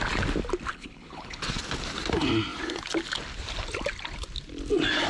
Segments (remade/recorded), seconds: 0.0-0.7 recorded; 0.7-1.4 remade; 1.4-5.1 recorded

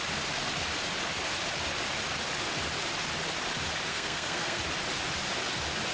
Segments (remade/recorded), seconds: 0.0-3.9 recorded; 3.9-4.6 remade; 4.6-5.9 recorded